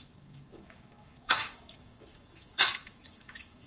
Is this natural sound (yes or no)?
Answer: no